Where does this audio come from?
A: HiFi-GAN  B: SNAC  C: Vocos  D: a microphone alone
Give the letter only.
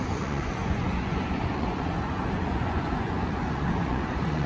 C